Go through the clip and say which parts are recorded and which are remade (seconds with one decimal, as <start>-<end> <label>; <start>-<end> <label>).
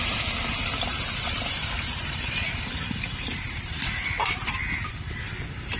0.0-0.9 recorded; 0.9-4.4 remade; 4.4-5.8 recorded